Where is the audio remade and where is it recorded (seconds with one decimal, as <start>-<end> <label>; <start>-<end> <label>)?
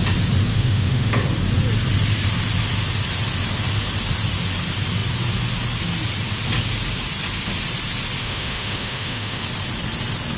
0.0-0.5 recorded; 0.5-1.1 remade; 1.1-8.2 recorded; 8.2-9.4 remade; 9.4-10.4 recorded